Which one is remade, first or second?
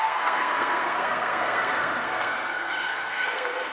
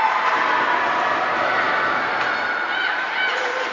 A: first